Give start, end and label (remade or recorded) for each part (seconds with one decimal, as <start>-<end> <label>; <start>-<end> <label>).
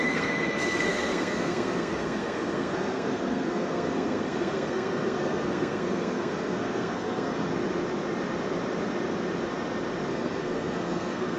0.0-7.5 remade; 7.5-10.1 recorded; 10.1-11.4 remade